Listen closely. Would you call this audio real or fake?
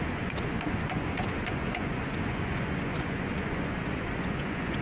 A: fake